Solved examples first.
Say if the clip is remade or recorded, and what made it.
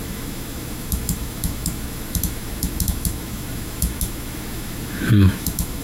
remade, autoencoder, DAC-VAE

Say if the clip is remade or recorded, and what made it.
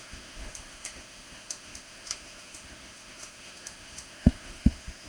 remade, autoencoder, DAC-VAE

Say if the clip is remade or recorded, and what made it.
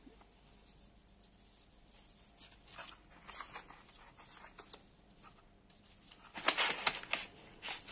recorded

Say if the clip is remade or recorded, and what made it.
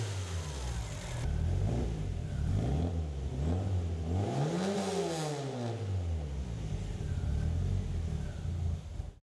recorded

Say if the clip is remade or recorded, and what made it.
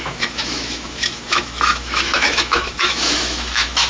remade, autoencoder, DAC-VAE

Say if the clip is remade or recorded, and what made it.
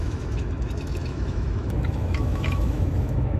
remade, autoencoder, DAC-VAE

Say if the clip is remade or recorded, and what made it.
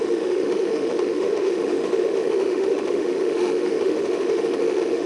remade, autoencoder, DAC-VAE